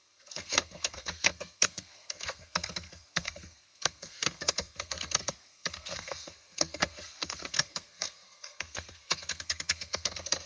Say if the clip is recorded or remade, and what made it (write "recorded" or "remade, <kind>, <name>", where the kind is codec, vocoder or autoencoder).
remade, codec, SNAC